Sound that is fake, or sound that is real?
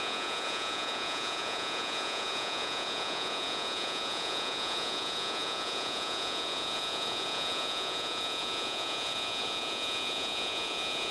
fake